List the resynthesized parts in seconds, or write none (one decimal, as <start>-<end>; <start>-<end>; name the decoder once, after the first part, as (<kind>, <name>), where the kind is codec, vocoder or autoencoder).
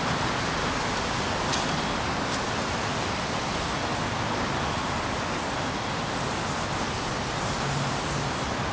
none